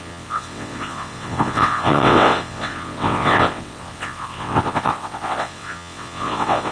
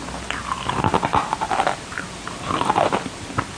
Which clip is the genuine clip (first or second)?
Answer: second